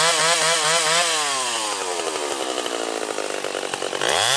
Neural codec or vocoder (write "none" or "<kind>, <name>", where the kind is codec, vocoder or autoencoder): none